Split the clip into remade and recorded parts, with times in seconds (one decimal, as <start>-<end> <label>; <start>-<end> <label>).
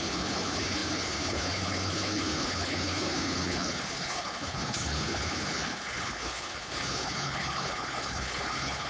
0.0-8.9 remade